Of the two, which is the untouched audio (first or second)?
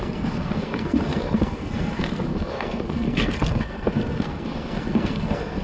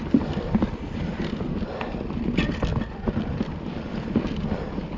second